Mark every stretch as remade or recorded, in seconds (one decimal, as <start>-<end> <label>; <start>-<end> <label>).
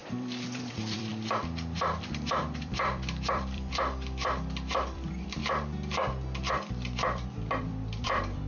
0.0-1.1 remade; 1.1-2.4 recorded; 2.4-5.4 remade; 5.4-6.5 recorded; 6.5-8.5 remade